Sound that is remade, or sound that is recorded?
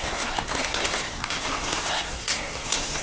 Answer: remade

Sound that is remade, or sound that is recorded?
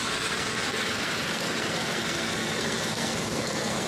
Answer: remade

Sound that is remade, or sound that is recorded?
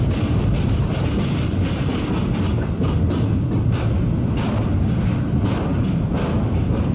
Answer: recorded